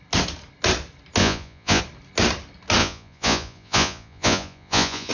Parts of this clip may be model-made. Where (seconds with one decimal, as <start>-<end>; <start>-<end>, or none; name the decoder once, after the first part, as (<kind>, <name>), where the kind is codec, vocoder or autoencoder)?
1.2-1.8 (vocoder, Vocos); 2.8-5.1